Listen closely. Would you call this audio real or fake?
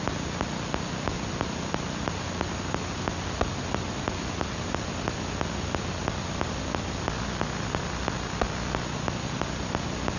real